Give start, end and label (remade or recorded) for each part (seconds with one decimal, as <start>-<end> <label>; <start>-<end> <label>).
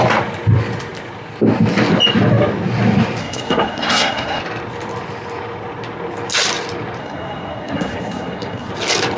0.0-3.2 recorded; 3.2-4.4 remade; 4.4-7.0 recorded; 7.0-8.7 remade; 8.7-9.2 recorded